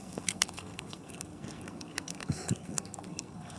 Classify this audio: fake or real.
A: fake